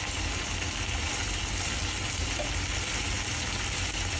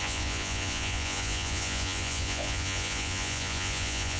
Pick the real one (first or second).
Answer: first